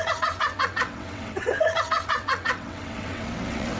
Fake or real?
fake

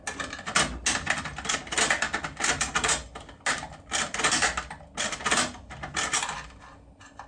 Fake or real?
real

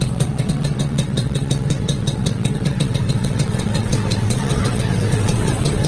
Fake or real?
fake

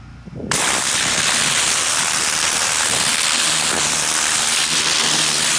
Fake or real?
real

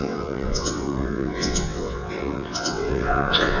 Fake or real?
fake